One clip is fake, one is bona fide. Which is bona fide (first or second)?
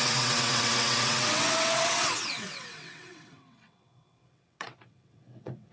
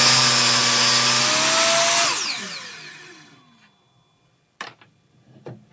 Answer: second